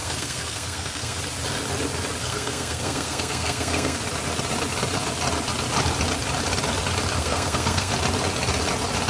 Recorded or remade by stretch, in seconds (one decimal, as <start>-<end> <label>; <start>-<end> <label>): 0.0-1.2 remade; 1.2-2.2 recorded; 2.2-4.0 remade; 4.0-7.2 recorded; 7.2-7.9 remade; 7.9-9.1 recorded